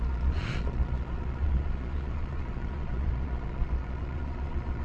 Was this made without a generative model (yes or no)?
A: no